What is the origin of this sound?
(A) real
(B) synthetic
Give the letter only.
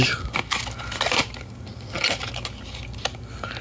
A